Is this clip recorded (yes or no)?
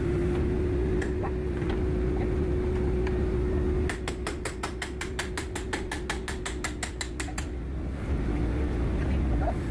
yes